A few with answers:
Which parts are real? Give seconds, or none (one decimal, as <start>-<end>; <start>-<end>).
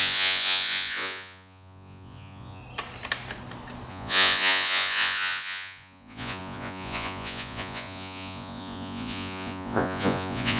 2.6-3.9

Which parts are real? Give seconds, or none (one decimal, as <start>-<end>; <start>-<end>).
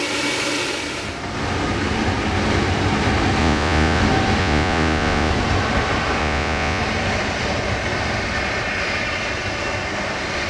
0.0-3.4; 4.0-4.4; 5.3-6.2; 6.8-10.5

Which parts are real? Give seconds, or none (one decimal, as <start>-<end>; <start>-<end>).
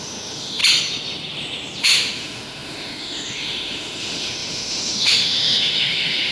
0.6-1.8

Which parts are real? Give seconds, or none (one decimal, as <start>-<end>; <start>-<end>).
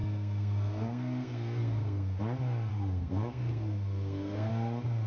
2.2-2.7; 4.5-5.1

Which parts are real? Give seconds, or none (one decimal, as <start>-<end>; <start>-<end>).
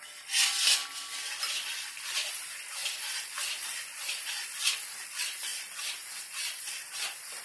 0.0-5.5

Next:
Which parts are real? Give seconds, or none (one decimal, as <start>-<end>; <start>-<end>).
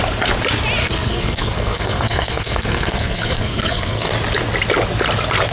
0.0-0.8; 4.1-5.5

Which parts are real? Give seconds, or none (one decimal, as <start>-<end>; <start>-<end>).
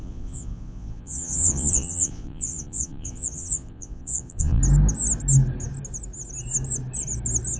4.6-7.6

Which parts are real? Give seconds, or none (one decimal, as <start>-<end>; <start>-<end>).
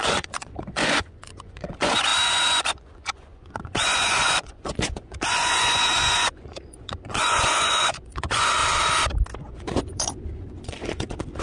8.6-9.4